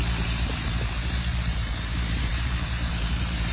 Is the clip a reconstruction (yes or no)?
yes